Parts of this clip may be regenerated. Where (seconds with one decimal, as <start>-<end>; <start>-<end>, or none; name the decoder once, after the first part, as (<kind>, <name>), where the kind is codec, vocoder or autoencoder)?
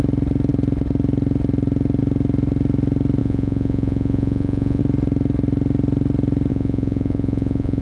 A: 3.2-4.8 (vocoder, Vocos); 6.5-7.8